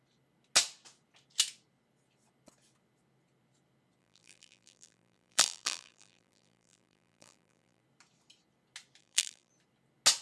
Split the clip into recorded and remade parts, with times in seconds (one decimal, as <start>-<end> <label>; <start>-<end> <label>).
0.0-4.0 recorded; 4.0-7.8 remade; 7.8-9.0 recorded; 9.0-9.5 remade; 9.5-10.2 recorded